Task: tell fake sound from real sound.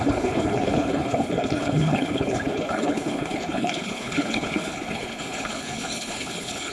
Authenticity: fake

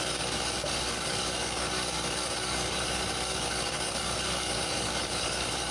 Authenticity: fake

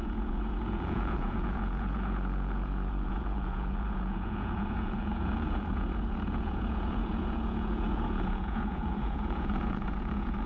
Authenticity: fake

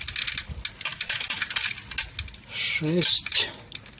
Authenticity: real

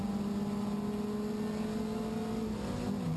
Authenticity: real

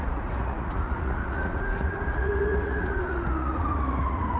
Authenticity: fake